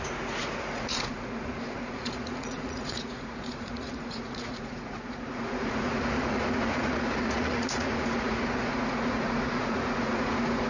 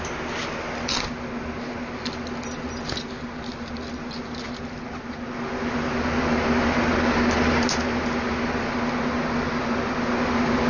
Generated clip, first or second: first